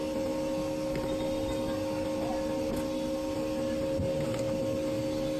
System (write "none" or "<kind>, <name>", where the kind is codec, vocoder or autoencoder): none